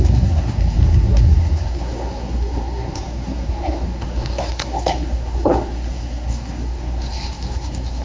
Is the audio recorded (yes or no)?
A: no